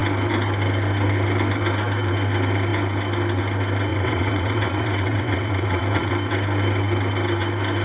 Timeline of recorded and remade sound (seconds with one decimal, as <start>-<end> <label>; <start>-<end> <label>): 0.0-3.9 recorded; 3.9-6.1 remade; 6.1-7.8 recorded